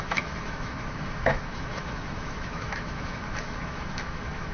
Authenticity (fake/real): fake